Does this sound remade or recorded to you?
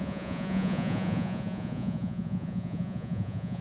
remade